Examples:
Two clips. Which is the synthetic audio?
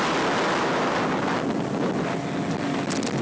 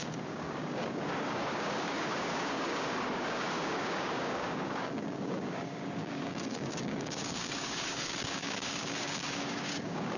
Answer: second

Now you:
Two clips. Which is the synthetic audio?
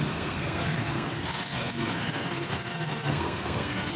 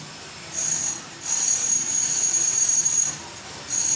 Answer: first